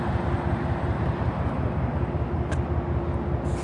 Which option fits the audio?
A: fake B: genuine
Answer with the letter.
B